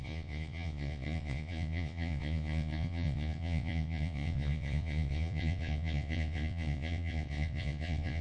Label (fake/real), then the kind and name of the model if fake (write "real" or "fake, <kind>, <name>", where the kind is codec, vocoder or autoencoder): fake, vocoder, Vocos